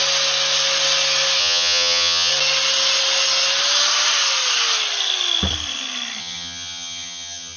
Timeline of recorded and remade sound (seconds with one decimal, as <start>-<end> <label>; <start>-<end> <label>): 0.0-1.4 recorded; 1.4-2.3 remade; 2.3-6.2 recorded; 6.2-7.6 remade